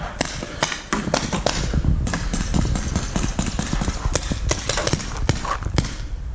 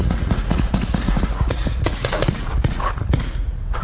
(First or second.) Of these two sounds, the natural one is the first